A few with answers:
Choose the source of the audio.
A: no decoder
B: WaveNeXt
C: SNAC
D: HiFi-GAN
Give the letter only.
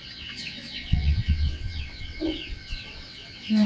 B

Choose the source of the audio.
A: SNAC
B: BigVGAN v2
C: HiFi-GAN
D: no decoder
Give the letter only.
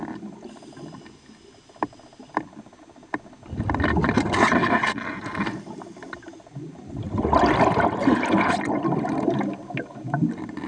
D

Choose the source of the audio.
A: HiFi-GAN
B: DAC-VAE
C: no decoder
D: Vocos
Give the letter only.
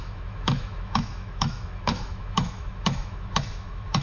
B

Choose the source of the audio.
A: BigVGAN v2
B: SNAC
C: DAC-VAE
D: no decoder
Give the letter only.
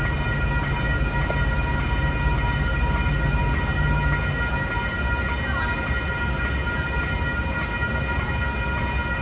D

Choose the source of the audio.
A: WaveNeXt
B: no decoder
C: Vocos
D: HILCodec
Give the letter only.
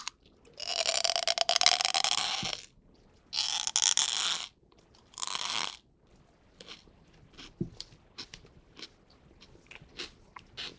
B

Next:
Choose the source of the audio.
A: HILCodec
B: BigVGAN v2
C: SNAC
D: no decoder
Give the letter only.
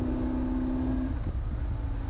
D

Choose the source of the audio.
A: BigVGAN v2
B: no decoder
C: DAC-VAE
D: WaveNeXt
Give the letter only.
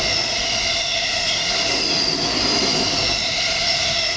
B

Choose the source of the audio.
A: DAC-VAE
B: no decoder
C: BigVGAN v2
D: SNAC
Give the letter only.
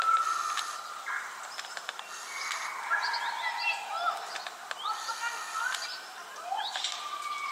B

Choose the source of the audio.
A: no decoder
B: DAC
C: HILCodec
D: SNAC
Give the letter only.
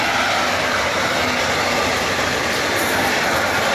A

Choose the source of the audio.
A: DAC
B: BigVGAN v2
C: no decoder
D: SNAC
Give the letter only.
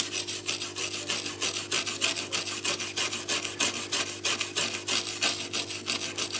C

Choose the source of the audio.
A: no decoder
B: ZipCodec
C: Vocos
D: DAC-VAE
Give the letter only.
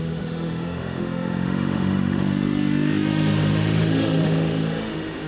D